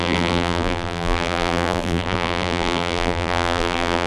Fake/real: fake